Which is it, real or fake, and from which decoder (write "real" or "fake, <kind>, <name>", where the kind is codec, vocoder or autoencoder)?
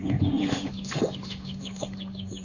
fake, autoencoder, DAC-VAE